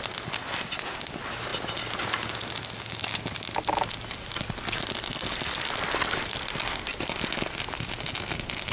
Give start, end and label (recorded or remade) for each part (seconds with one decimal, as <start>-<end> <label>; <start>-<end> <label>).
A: 0.0-8.7 recorded